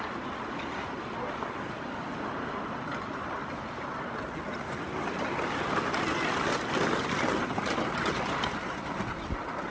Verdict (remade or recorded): recorded